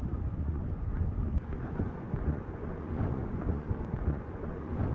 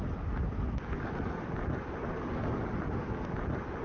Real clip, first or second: second